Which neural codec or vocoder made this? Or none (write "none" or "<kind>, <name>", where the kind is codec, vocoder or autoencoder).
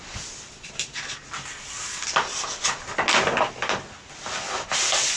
none